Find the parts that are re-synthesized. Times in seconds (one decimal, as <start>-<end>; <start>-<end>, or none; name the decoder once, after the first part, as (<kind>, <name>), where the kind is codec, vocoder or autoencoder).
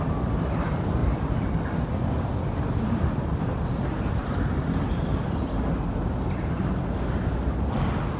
1.0-3.4 (vocoder, BigVGAN v2); 4.2-5.7